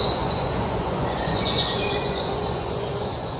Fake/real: fake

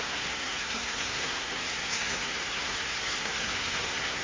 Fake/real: fake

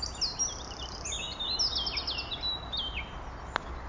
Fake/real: real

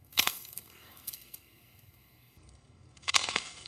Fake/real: fake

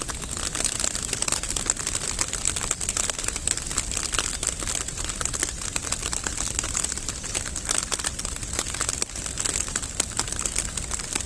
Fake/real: real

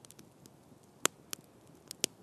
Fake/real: real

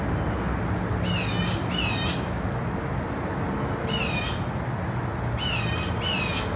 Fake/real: real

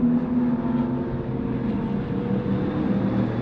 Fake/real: real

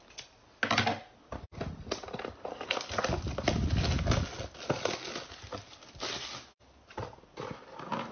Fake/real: real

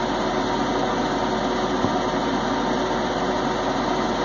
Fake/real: real